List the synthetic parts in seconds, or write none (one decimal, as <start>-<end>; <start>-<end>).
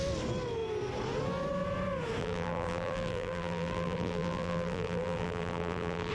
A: 2.2-6.1